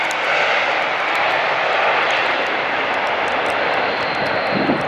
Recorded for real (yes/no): no